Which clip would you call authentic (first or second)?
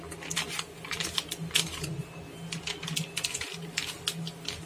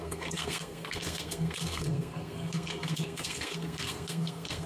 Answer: first